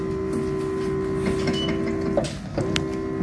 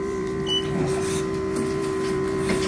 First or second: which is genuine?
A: first